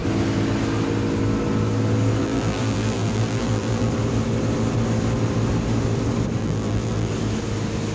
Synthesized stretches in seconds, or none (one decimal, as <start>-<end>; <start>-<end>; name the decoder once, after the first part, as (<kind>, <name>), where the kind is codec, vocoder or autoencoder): 2.2-3.9 (vocoder, BigVGAN v2); 6.4-7.1